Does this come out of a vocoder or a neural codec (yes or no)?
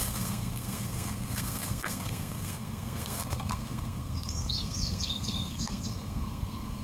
yes